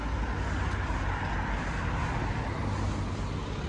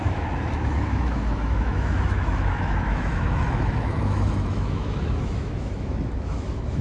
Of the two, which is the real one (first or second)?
first